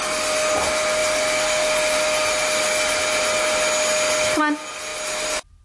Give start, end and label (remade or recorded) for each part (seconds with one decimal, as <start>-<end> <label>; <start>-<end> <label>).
0.0-5.6 recorded